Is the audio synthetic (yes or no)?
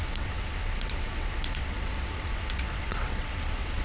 yes